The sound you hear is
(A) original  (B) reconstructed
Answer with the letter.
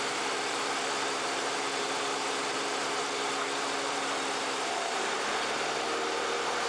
B